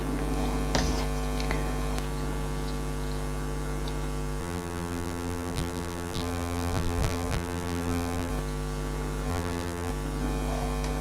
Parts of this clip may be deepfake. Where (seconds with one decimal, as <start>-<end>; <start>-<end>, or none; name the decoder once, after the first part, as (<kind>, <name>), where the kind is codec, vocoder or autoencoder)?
4.4-8.3 (vocoder, BigVGAN v2); 9.3-9.9